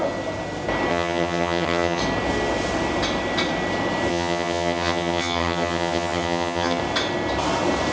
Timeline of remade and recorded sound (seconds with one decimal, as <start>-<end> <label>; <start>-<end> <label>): 0.0-0.9 recorded; 0.9-2.0 remade; 2.0-4.1 recorded; 4.1-6.8 remade; 6.8-7.9 recorded